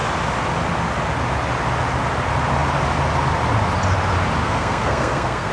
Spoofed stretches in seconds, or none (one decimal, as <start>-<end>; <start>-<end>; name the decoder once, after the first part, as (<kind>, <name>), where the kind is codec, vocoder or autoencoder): 4.4-5.5 (codec, SNAC)